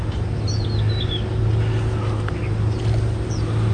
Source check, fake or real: real